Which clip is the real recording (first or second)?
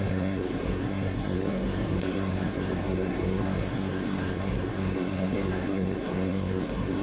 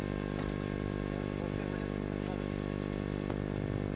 second